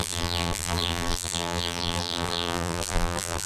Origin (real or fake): fake